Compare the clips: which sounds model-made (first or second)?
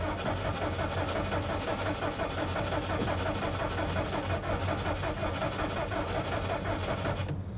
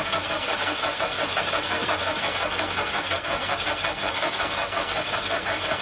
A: second